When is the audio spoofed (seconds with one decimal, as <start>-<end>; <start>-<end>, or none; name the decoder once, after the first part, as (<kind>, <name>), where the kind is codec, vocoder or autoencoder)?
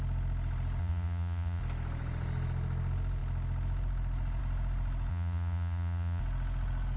0.8-1.6 (vocoder, Vocos); 5.1-6.2